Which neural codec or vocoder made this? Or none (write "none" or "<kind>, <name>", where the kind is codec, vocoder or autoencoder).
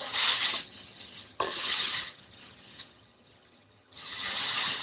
vocoder, HiFi-GAN